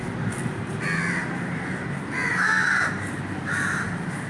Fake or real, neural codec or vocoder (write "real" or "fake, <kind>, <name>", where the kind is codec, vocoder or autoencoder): real